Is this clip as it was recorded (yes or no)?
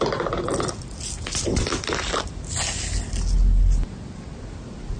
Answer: yes